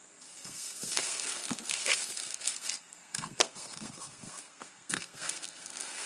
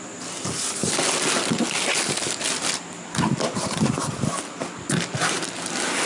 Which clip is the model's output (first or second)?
first